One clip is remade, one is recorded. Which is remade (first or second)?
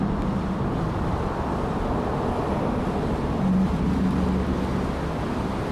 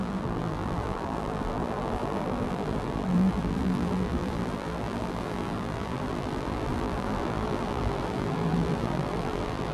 second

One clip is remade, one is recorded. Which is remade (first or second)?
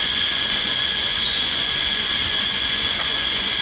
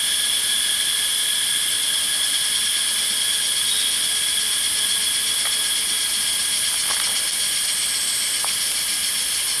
first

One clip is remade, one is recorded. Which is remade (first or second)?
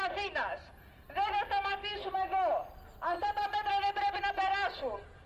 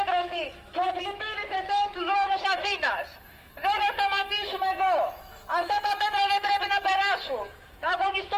second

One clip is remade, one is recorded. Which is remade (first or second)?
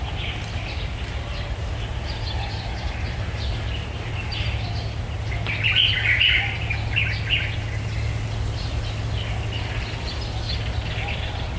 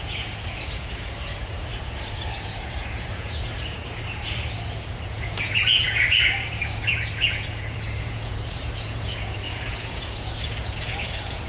second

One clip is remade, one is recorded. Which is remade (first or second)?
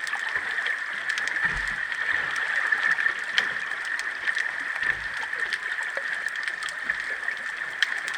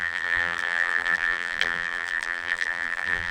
second